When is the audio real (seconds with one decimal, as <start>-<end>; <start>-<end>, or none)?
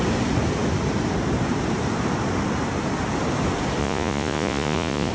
0.0-3.8